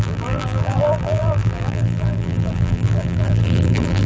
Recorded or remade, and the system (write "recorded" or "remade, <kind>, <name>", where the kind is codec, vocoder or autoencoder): remade, vocoder, BigVGAN v2